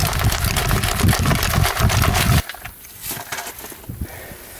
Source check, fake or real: real